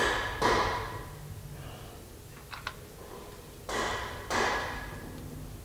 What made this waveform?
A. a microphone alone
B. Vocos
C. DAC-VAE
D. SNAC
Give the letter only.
A